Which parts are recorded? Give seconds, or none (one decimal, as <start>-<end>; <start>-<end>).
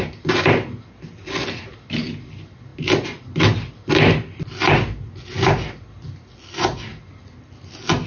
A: 0.0-8.1